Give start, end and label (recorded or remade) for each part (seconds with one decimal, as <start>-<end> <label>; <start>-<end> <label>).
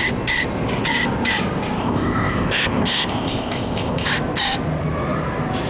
0.0-1.8 recorded; 1.8-4.1 remade; 4.1-5.7 recorded